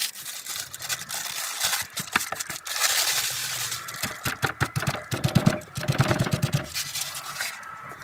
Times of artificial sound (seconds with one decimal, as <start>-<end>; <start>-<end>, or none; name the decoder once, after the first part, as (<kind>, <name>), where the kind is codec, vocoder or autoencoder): 6.1-8.0 (vocoder, Vocos)